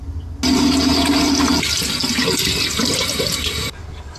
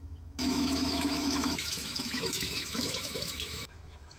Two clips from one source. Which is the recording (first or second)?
first